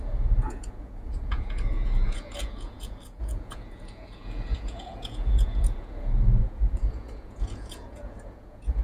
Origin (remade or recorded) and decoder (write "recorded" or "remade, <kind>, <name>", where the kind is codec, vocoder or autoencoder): remade, vocoder, Vocos